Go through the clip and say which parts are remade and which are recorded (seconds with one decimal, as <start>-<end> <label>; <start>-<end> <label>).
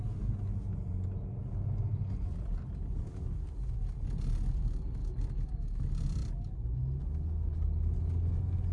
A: 0.0-8.7 recorded